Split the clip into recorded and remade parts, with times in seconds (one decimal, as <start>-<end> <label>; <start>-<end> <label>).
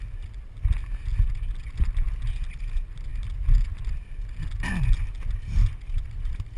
0.0-6.6 recorded